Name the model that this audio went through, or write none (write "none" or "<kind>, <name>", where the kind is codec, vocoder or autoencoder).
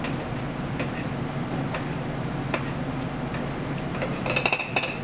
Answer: none